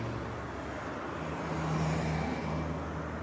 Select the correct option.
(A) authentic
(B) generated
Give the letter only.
A